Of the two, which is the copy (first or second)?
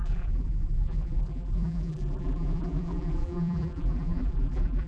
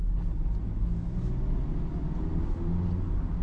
first